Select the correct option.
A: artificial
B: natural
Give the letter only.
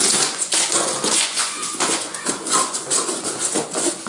A